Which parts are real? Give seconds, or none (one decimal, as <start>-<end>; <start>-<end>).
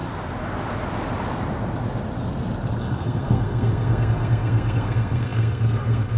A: 0.0-2.8